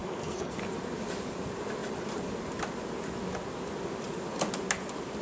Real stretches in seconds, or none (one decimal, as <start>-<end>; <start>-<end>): 0.6-5.2